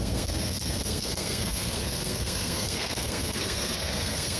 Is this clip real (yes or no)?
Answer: no